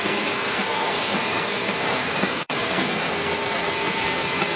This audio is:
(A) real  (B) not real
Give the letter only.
B